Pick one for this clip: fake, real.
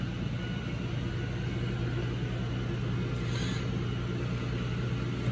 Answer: real